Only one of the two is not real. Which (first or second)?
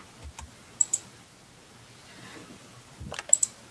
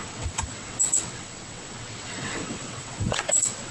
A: second